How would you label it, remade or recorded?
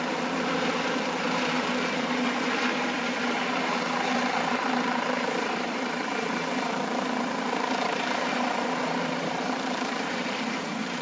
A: remade